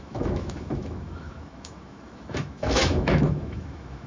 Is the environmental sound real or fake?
fake